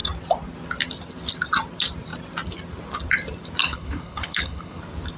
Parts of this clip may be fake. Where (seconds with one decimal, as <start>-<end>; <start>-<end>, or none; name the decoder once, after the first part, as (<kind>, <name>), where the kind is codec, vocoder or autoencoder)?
3.6-4.8 (codec, HILCodec)